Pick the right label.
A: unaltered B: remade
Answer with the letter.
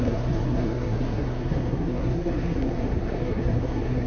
B